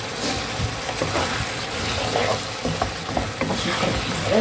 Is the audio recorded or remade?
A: recorded